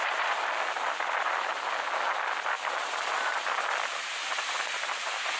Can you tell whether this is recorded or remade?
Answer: recorded